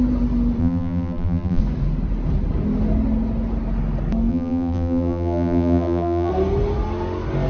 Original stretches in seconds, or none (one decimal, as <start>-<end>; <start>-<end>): 0.0-0.6; 1.6-4.3; 6.3-7.5